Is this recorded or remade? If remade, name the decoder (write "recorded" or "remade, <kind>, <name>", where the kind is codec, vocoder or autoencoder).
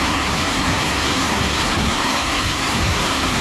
remade, codec, SNAC